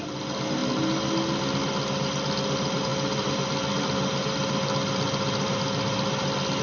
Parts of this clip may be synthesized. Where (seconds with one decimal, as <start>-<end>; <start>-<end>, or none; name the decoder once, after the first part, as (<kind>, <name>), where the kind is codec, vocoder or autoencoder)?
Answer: none

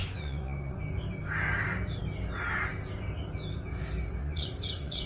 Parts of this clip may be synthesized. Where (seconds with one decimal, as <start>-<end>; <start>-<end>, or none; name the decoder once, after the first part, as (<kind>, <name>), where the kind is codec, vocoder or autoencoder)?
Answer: 0.0-0.8 (vocoder, Vocos); 4.2-5.1

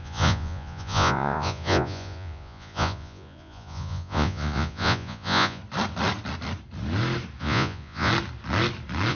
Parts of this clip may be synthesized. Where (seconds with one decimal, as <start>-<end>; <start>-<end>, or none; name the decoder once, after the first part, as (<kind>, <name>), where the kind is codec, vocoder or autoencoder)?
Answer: 0.0-5.6 (vocoder, Vocos); 7.4-8.1